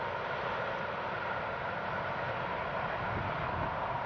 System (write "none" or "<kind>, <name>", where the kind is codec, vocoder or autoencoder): none